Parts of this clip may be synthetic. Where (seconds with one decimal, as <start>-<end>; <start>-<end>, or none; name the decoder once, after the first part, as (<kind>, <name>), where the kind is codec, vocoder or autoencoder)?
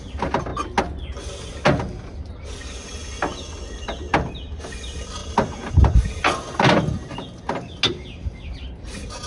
none